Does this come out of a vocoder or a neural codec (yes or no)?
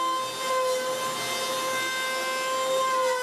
no